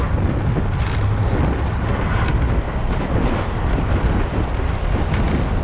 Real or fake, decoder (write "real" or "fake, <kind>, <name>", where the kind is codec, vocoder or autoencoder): real